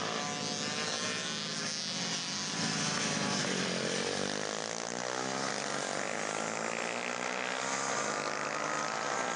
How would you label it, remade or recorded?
recorded